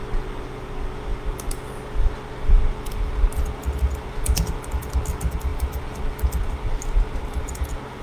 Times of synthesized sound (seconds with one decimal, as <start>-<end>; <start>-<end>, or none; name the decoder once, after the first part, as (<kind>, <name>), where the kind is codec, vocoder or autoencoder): none